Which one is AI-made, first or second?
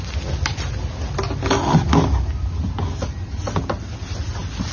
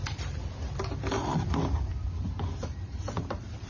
second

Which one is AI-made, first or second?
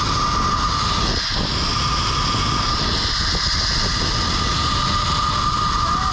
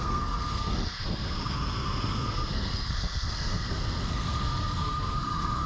second